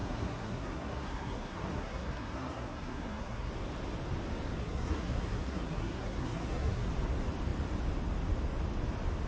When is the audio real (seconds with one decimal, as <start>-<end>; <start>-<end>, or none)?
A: 3.5-4.6; 6.9-9.3